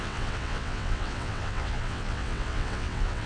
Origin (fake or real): fake